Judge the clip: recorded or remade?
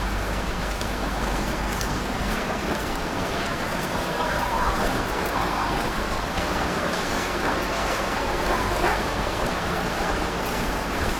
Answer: remade